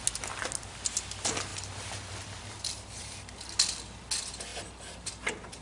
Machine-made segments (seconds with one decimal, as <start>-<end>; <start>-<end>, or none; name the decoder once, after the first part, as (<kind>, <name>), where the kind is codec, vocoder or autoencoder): 1.5-3.0 (vocoder, BigVGAN v2); 4.5-5.1